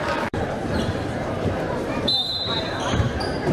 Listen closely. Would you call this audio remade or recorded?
remade